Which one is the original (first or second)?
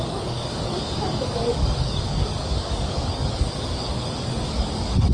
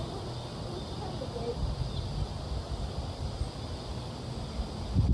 second